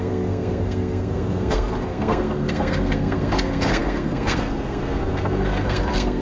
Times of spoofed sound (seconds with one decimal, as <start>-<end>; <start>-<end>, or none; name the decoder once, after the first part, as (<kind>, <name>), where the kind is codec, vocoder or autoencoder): 0.0-6.2 (codec, SNAC)

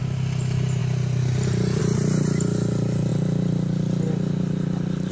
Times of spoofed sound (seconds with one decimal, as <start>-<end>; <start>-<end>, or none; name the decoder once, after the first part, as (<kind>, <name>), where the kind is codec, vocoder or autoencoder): none

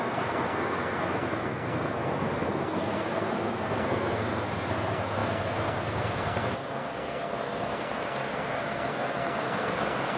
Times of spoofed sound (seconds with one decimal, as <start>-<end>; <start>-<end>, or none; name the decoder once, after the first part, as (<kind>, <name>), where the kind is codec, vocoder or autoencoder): 0.0-10.2 (codec, SNAC)

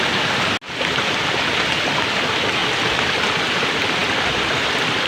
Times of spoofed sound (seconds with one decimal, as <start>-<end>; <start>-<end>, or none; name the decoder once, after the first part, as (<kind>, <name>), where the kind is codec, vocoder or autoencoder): none